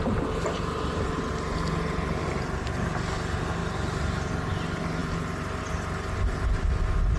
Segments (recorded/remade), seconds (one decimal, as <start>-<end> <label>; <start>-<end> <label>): 0.0-7.2 recorded